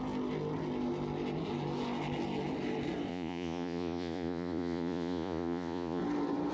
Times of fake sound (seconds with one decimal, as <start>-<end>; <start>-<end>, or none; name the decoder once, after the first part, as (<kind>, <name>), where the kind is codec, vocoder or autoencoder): 3.1-6.0 (vocoder, Vocos)